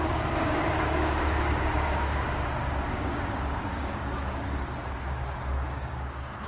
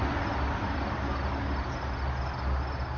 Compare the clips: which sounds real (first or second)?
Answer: second